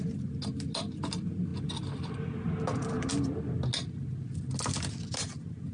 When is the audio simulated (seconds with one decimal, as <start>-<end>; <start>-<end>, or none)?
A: none